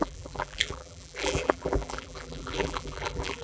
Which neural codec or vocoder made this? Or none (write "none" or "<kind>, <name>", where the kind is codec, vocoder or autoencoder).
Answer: vocoder, BigVGAN v2